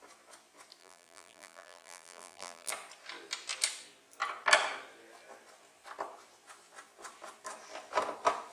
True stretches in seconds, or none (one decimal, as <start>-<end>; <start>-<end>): 0.0-0.8; 2.7-8.5